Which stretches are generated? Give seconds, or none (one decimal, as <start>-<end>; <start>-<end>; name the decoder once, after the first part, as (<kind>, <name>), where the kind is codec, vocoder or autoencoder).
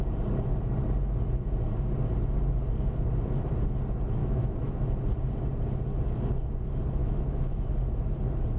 4.2-4.9 (autoencoder, DAC-VAE); 7.0-7.7